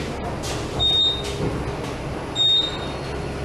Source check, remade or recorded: recorded